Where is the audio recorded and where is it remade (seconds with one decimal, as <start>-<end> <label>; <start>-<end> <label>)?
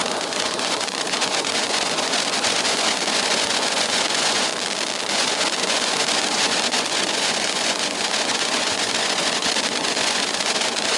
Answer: 0.0-4.5 remade; 4.5-5.1 recorded; 5.1-11.0 remade